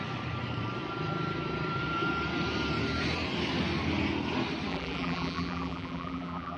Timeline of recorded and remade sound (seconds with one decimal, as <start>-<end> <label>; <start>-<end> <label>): 0.0-4.7 recorded; 4.7-6.6 remade